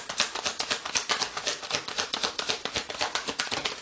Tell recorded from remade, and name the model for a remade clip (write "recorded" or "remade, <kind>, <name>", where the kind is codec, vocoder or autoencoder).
recorded